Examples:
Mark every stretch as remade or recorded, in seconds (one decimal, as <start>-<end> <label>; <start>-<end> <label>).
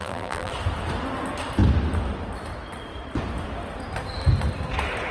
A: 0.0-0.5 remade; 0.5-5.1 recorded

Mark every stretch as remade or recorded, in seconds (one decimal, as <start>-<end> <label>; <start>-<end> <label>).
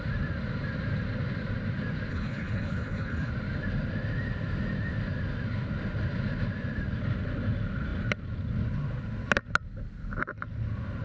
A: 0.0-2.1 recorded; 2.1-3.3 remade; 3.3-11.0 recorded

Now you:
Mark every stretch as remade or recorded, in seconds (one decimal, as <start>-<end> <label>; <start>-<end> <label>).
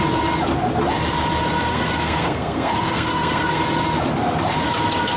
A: 0.0-1.7 recorded; 1.7-3.6 remade; 3.6-5.2 recorded